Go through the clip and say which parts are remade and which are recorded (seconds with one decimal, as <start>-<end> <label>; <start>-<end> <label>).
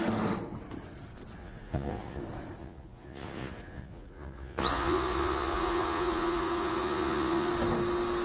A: 0.0-1.4 recorded; 1.4-2.2 remade; 2.2-2.6 recorded; 2.6-7.5 remade; 7.5-8.2 recorded